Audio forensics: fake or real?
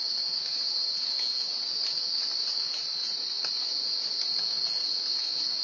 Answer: real